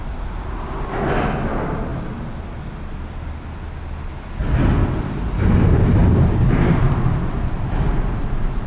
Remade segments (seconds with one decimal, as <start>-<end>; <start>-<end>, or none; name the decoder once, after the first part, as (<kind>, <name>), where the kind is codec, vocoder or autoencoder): 6.0-6.9 (vocoder, BigVGAN v2)